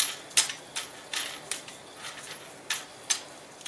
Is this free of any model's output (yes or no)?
yes